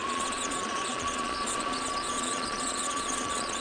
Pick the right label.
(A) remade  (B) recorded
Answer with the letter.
A